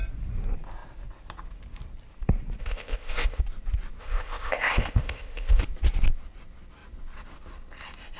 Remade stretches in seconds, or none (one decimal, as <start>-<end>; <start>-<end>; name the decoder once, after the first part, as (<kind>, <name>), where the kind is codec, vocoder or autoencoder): 2.6-3.4 (codec, ZipCodec); 4.0-5.6